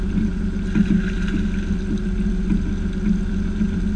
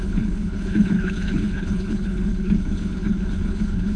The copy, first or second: second